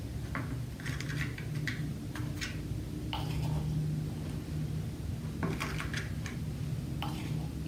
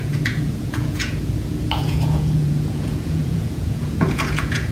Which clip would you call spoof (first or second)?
second